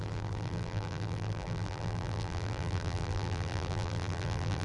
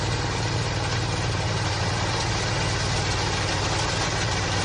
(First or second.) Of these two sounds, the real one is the second